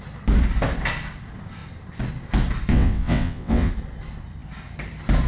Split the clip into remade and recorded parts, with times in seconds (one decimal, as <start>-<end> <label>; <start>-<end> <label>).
0.0-2.7 recorded; 2.7-3.7 remade; 3.7-5.3 recorded

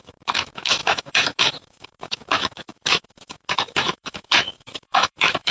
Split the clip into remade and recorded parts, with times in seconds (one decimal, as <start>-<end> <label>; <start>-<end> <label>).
0.0-5.5 remade

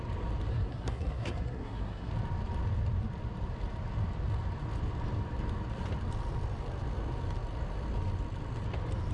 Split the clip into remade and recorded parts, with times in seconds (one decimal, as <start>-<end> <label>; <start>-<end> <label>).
0.0-0.5 recorded; 0.5-2.1 remade; 2.1-9.1 recorded

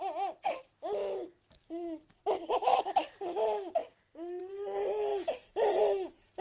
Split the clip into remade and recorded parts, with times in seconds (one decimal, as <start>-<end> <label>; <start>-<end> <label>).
0.0-2.7 recorded; 2.7-3.2 remade; 3.2-3.8 recorded; 3.8-4.5 remade; 4.5-6.4 recorded

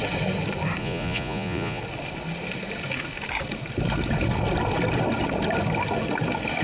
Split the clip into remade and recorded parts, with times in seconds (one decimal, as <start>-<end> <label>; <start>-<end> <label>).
0.0-0.8 recorded; 0.8-1.8 remade; 1.8-6.6 recorded

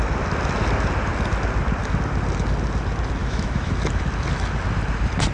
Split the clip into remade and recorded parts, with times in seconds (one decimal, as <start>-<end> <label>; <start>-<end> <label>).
0.0-3.2 recorded; 3.2-3.7 remade; 3.7-5.3 recorded

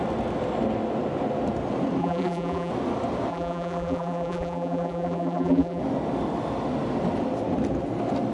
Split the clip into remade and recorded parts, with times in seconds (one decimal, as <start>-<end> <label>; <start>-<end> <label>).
0.0-2.0 recorded; 2.0-2.7 remade; 2.7-3.3 recorded; 3.3-5.8 remade; 5.8-8.3 recorded